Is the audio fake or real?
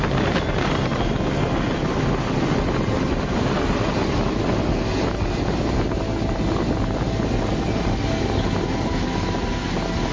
real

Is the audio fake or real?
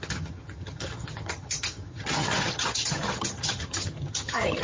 fake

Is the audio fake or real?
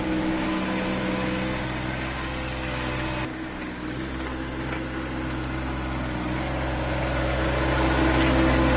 real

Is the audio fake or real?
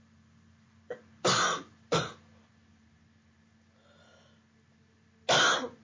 real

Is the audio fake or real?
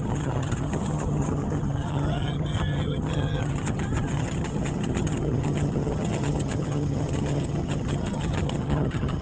fake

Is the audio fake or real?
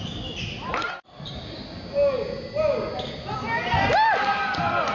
real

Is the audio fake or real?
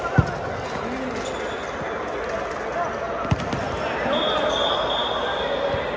real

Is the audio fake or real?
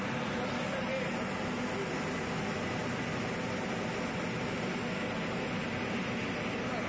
real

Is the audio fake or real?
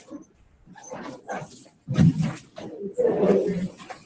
real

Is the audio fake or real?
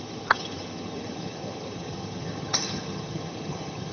fake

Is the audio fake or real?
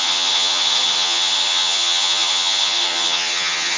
fake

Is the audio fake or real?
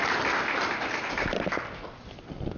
real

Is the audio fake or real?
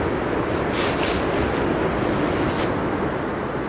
real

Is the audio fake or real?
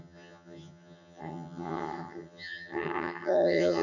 fake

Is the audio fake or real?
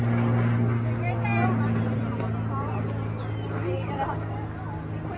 real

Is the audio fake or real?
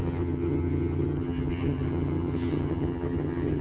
fake